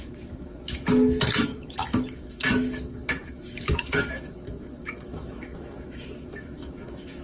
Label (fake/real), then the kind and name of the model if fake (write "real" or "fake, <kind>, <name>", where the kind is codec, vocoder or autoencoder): fake, autoencoder, DAC-VAE